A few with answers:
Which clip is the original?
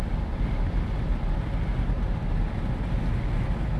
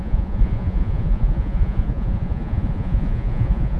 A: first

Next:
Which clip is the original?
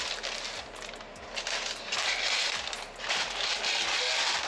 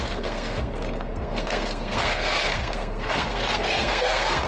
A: first